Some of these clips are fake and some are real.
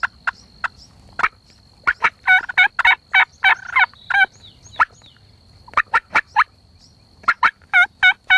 real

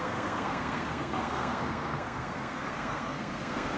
fake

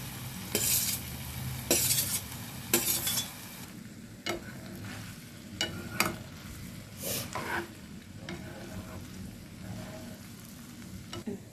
real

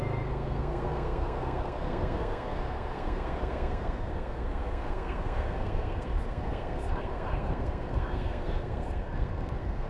fake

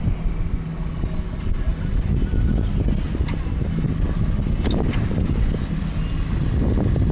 real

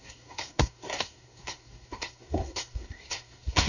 fake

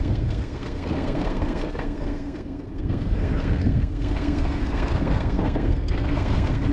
fake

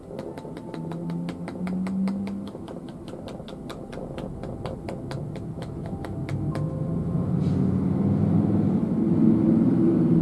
real